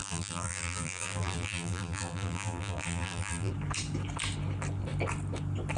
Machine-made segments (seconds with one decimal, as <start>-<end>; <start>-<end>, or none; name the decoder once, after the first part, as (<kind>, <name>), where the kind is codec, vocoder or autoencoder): 0.0-3.5 (vocoder, BigVGAN v2)